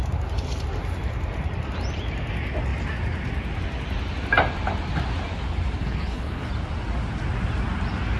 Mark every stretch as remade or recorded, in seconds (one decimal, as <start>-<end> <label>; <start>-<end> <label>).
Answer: 0.0-5.8 recorded; 5.8-6.5 remade; 6.5-8.2 recorded